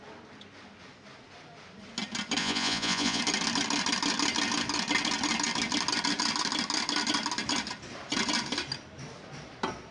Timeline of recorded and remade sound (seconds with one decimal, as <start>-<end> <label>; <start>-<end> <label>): 0.0-2.4 recorded; 2.4-3.2 remade; 3.2-9.9 recorded